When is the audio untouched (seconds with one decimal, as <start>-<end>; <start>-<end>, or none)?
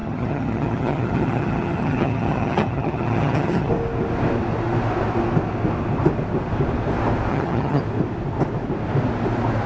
3.7-7.3; 7.8-9.7